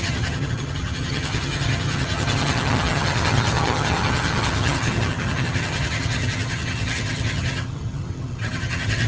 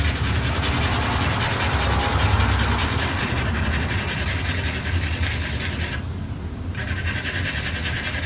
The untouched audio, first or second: second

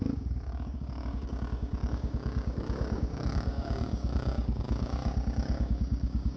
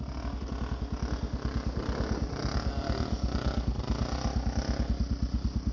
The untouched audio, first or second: second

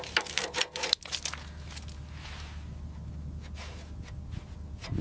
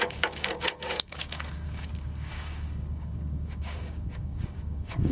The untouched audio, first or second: first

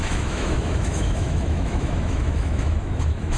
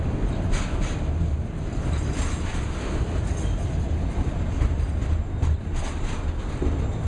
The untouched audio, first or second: second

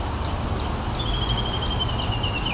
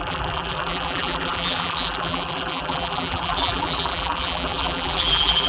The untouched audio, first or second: first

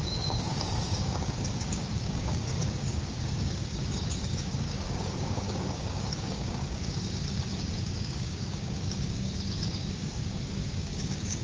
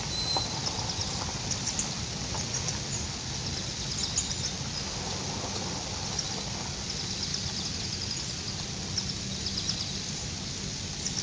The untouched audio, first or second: second